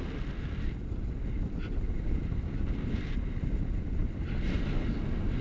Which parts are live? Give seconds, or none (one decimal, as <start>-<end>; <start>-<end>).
0.0-4.0; 4.8-5.4